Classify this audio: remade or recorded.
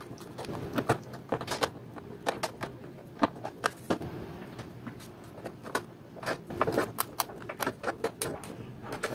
recorded